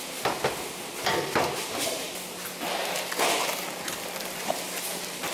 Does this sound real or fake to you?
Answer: real